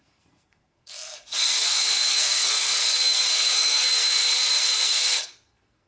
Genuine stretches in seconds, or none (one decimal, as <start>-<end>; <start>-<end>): none